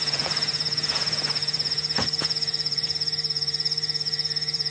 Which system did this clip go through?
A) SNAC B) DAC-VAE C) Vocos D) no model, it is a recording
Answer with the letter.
C